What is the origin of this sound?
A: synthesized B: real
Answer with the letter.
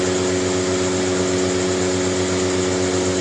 B